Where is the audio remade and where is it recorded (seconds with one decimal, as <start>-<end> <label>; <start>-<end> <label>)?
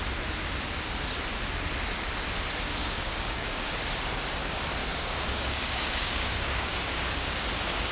0.0-2.8 recorded; 2.8-3.7 remade; 3.7-4.8 recorded; 4.8-7.5 remade; 7.5-7.9 recorded